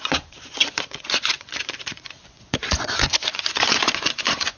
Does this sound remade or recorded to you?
remade